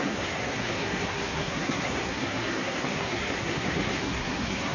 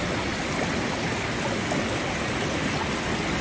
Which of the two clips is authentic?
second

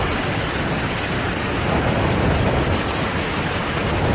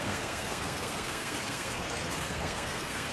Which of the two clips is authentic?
first